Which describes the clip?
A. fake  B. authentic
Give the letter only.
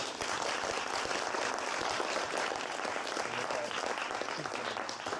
B